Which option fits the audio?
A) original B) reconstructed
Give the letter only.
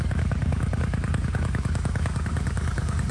B